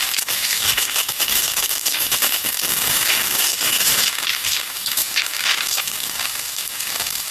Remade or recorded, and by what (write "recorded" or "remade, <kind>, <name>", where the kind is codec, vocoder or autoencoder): remade, codec, DAC